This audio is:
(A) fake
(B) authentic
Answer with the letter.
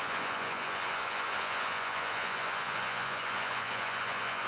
A